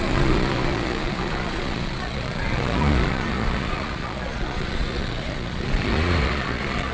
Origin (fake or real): fake